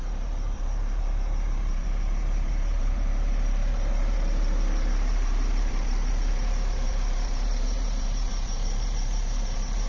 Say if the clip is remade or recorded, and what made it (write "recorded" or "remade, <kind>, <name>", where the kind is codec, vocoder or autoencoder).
remade, vocoder, BigVGAN v2